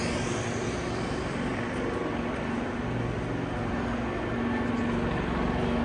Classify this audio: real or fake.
real